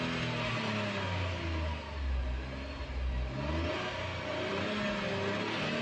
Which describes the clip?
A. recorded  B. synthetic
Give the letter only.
A